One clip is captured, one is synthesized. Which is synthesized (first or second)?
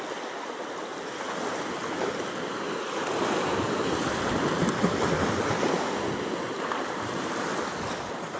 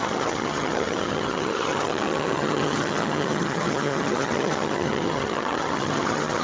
second